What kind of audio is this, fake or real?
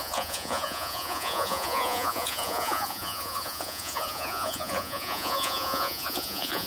fake